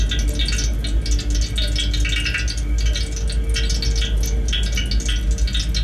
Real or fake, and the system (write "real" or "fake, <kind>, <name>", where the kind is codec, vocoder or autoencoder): real